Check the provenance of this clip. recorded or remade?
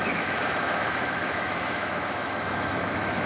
remade